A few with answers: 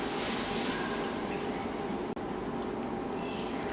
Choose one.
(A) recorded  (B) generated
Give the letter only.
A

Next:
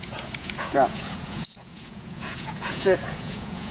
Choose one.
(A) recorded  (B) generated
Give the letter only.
B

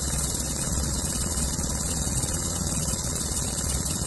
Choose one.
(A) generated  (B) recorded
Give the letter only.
A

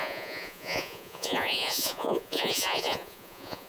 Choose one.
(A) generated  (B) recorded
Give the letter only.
A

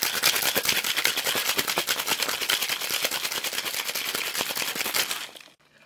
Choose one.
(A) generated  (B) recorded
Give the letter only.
B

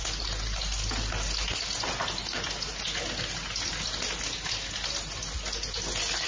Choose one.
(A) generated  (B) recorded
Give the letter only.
B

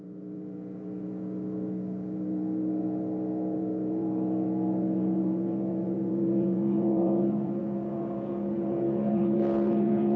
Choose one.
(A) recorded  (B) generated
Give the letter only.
B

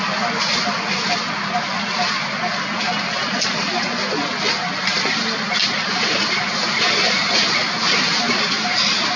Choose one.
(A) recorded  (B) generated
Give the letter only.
A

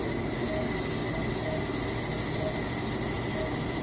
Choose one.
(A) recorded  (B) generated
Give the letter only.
A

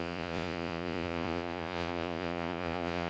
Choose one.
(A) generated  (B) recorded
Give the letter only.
A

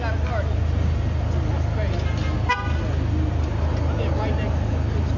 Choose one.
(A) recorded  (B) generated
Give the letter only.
A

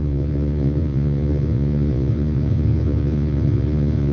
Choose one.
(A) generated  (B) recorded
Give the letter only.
A